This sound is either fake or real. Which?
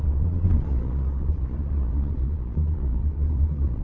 fake